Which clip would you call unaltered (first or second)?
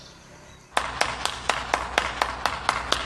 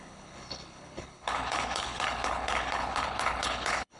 first